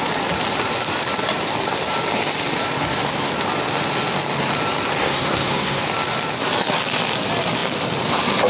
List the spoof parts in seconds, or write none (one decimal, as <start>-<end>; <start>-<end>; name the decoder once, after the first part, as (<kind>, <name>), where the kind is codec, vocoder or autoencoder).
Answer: 5.0-5.8 (codec, SNAC)